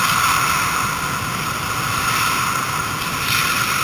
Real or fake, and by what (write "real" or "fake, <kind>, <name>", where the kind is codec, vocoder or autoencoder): real